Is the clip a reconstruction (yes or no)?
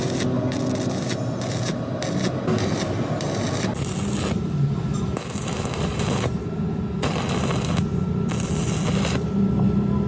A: no